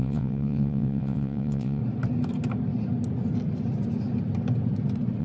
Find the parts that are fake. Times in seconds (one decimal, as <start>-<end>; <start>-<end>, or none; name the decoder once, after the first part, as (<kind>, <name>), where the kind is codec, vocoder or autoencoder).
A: 0.0-1.8 (vocoder, WaveNeXt)